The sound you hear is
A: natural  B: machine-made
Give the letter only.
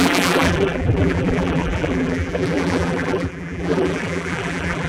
B